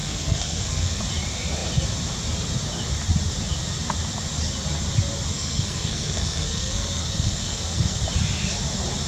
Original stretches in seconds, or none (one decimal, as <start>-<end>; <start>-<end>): 1.0-5.3; 8.0-9.1